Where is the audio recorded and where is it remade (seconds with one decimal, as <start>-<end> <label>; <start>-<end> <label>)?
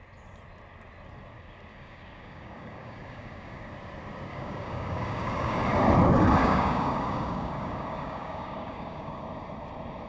0.0-1.7 recorded; 1.7-3.7 remade; 3.7-4.3 recorded; 4.3-5.6 remade; 5.6-6.4 recorded; 6.4-9.2 remade; 9.2-10.1 recorded